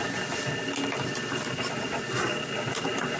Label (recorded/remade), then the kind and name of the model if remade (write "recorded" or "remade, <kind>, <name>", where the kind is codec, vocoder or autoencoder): recorded